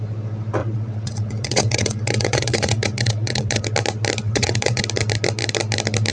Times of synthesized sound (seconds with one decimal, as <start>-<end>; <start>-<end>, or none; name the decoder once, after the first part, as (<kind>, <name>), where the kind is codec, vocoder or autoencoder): 0.6-3.6 (vocoder, WaveNeXt); 4.2-4.8